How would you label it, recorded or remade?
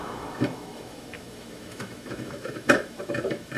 remade